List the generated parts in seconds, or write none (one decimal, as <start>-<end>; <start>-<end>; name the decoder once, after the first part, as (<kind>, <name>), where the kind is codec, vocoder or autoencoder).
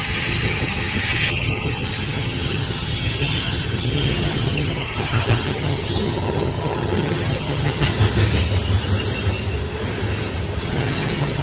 0.0-7.9 (vocoder, HiFi-GAN); 10.6-11.4